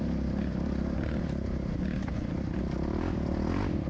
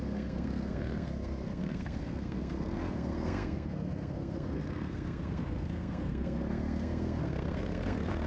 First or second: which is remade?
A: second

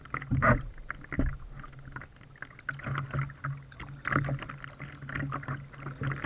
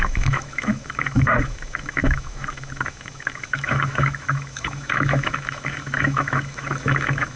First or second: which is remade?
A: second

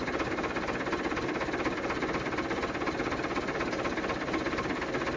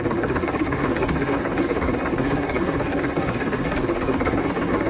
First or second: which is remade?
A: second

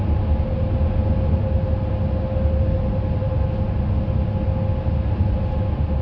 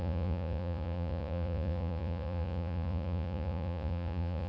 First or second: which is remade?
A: second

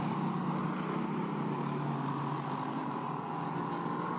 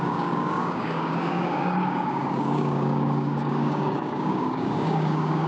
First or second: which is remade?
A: second